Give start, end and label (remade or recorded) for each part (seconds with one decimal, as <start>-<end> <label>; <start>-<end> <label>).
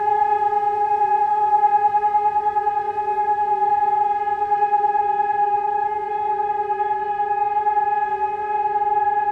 0.0-5.4 recorded; 5.4-6.1 remade; 6.1-9.3 recorded